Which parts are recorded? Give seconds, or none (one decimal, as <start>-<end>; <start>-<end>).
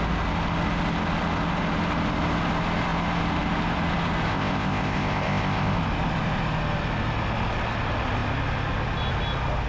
0.0-4.3; 5.8-9.7